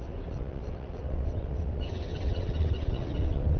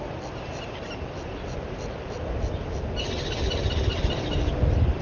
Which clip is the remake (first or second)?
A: first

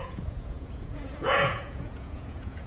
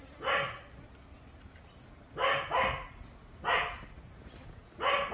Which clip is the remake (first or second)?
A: first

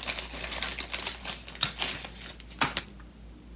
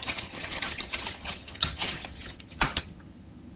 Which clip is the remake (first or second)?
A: second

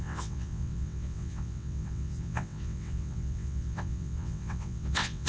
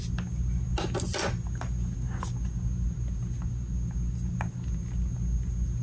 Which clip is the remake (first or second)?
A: first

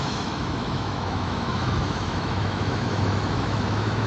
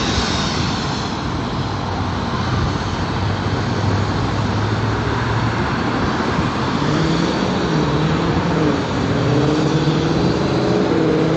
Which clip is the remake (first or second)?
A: first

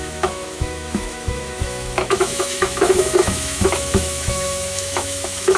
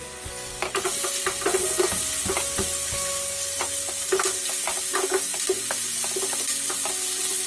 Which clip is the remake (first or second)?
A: first